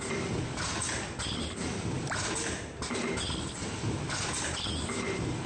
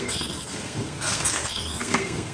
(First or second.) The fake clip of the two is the second